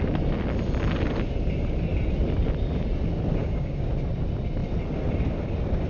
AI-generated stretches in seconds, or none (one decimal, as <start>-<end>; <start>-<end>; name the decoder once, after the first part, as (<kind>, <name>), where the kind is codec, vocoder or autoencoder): 3.4-3.9 (codec, DAC)